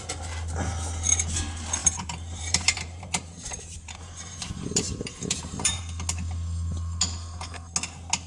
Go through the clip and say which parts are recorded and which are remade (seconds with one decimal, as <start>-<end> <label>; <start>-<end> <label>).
0.0-1.8 recorded; 1.8-5.8 remade; 5.8-8.3 recorded